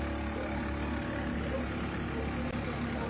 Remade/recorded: recorded